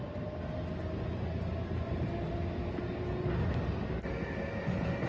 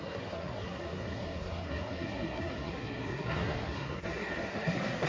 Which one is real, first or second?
first